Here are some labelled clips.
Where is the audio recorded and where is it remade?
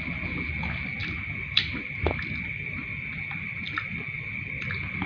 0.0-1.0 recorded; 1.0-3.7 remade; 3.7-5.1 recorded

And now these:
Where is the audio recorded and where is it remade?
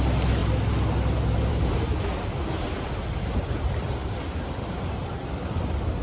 0.0-6.0 recorded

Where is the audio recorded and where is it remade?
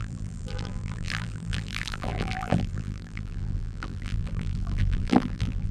0.0-5.7 remade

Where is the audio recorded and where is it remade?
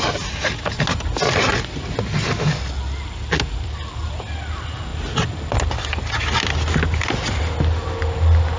0.0-8.6 recorded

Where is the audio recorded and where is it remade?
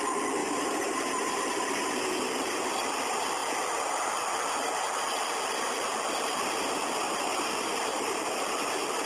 0.0-0.4 recorded; 0.4-1.5 remade; 1.5-7.7 recorded; 7.7-8.3 remade; 8.3-9.1 recorded